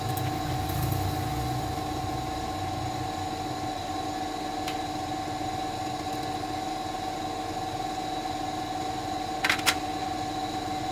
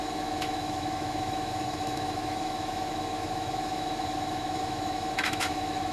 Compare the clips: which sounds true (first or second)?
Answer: first